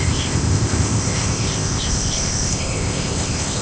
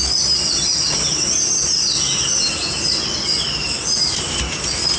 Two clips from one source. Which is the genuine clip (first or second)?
second